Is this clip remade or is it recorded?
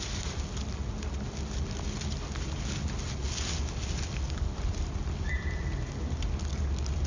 recorded